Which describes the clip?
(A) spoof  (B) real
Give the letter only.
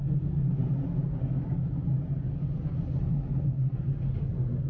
B